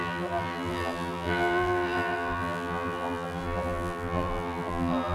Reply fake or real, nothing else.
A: fake